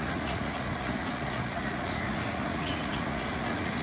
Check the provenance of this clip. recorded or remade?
remade